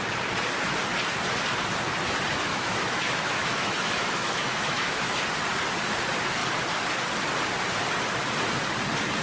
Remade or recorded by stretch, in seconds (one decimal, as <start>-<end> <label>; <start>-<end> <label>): 0.0-2.5 recorded; 2.5-5.2 remade; 5.2-9.2 recorded